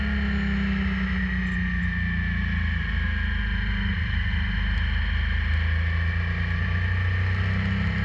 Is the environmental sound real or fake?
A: real